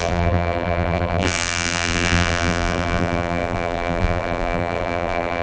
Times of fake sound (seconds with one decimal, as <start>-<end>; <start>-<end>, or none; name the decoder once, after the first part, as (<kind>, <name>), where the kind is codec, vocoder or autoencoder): 0.0-5.4 (vocoder, BigVGAN v2)